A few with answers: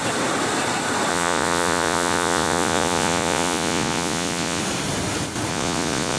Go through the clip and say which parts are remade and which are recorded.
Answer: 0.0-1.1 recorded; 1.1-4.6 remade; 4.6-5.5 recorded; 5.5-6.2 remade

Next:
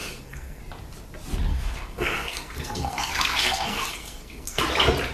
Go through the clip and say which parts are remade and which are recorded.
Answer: 0.0-0.6 remade; 0.6-1.5 recorded; 1.5-4.6 remade; 4.6-5.1 recorded

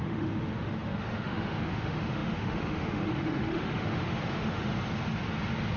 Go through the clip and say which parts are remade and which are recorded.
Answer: 0.0-4.7 remade; 4.7-5.8 recorded

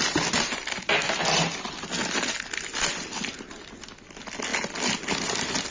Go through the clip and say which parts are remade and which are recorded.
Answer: 0.0-5.7 recorded